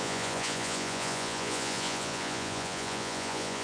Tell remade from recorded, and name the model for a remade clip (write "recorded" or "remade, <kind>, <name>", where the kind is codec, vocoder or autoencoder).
remade, vocoder, Vocos